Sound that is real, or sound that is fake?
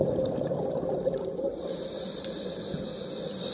real